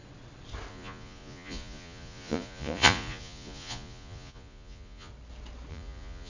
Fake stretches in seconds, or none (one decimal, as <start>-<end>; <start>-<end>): 0.7-5.1; 5.7-6.3